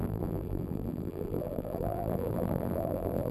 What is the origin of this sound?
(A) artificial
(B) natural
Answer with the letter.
A